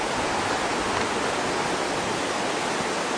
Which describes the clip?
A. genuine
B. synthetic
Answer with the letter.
A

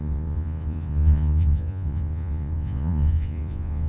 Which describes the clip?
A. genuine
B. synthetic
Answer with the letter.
B